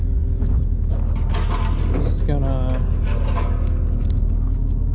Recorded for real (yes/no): yes